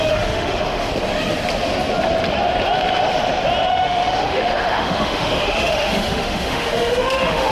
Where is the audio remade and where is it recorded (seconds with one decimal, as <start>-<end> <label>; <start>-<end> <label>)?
0.0-0.9 remade; 0.9-3.7 recorded; 3.7-7.5 remade